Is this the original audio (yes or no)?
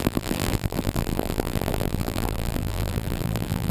no